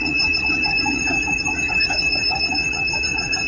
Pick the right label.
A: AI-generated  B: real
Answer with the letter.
A